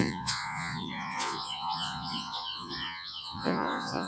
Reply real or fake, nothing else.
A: fake